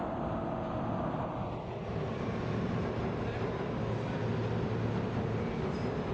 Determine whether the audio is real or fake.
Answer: real